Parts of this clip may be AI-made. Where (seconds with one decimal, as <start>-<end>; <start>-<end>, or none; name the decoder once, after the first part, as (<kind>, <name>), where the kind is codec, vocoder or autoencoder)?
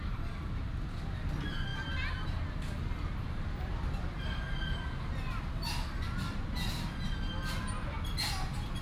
none